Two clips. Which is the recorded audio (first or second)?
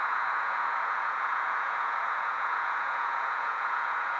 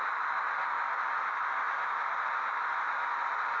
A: second